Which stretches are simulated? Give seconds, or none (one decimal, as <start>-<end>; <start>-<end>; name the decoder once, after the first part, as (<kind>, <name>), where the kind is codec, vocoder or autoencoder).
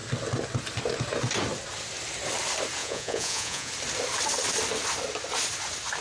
2.8-3.7 (vocoder, Vocos)